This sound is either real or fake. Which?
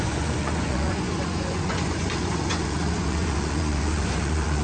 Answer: fake